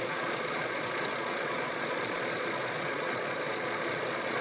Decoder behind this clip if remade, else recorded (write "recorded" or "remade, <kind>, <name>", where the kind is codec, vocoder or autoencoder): remade, vocoder, Vocos